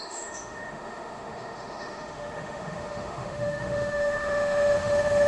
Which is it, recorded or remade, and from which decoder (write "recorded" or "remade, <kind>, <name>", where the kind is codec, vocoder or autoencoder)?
remade, autoencoder, DAC-VAE